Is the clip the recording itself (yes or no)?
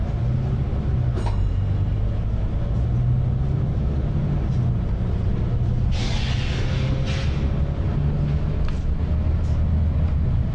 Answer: yes